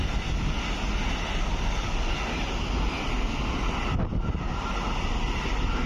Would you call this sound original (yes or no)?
yes